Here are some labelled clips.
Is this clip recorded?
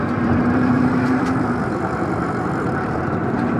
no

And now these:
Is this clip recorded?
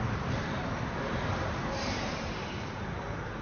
no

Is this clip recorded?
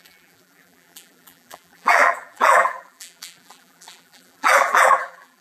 no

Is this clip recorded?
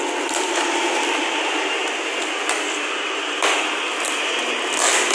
yes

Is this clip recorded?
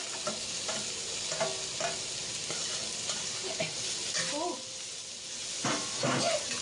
yes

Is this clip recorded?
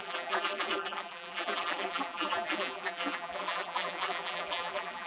no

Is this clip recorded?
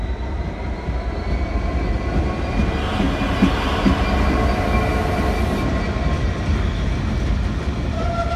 yes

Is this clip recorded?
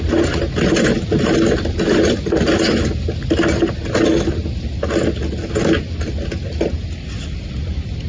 yes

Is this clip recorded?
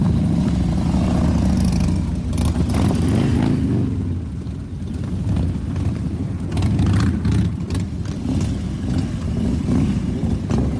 yes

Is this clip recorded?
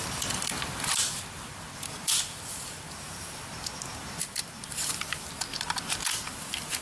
no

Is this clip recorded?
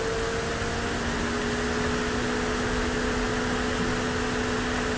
yes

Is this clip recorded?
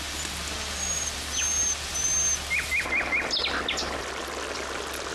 yes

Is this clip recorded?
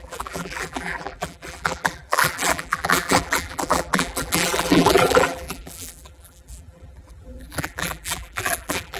no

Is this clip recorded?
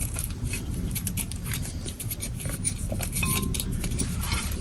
no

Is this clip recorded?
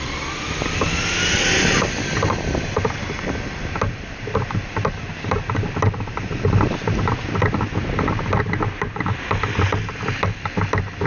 yes